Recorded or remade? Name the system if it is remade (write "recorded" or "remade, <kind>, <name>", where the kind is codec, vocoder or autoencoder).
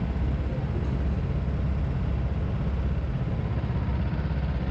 recorded